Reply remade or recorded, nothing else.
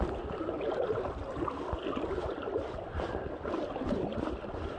recorded